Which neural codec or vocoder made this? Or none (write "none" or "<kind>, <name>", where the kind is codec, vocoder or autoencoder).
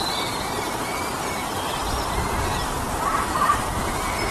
vocoder, BigVGAN v2